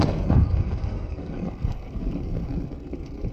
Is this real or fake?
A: fake